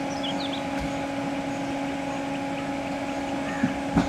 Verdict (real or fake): real